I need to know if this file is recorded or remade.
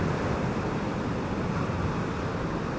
recorded